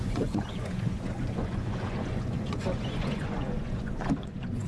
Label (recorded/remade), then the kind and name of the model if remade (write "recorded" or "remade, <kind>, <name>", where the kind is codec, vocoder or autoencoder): remade, vocoder, Vocos